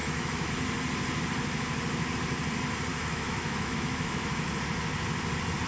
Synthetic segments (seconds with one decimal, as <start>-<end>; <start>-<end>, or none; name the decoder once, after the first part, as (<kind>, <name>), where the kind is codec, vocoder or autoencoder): 0.0-0.5 (autoencoder, DAC-VAE); 2.9-4.3